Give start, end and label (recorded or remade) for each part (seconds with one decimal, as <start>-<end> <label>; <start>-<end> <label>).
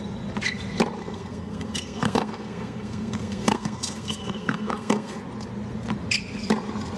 0.0-1.0 recorded; 1.0-5.2 remade; 5.2-7.0 recorded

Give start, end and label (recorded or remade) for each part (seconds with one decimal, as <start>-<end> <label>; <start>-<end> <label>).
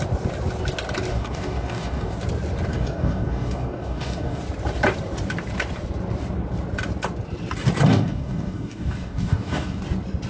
0.0-1.1 recorded; 1.1-2.2 remade; 2.2-2.7 recorded; 2.7-4.4 remade; 4.4-7.9 recorded; 7.9-9.8 remade; 9.8-10.3 recorded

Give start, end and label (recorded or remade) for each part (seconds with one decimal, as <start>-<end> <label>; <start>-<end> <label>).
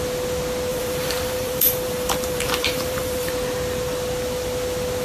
0.0-0.7 recorded; 0.7-3.3 remade; 3.3-5.0 recorded